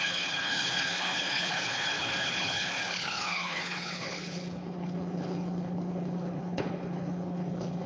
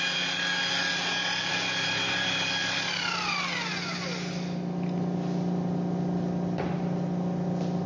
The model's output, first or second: first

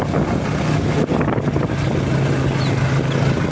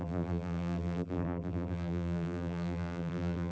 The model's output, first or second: second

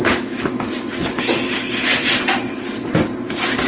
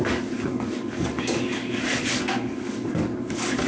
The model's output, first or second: second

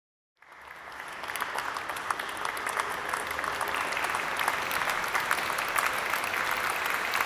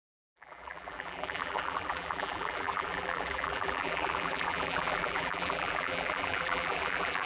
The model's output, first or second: second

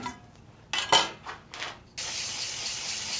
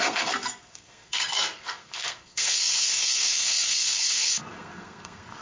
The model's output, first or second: second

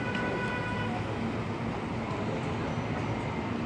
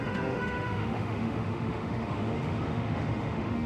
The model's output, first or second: second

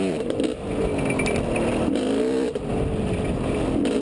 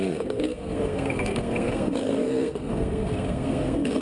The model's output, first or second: second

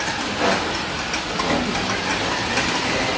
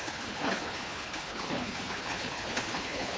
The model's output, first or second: second